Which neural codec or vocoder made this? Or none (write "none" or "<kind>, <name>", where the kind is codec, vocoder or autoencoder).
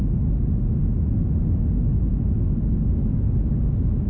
none